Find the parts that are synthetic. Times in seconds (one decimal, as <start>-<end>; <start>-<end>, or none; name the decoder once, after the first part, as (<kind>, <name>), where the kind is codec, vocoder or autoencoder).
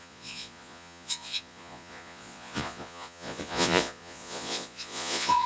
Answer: 0.0-5.5 (vocoder, Vocos)